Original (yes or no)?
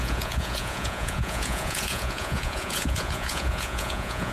no